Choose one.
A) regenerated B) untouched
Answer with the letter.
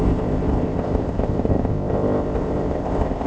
A